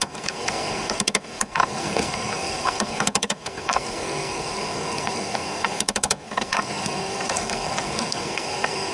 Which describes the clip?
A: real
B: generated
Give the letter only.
B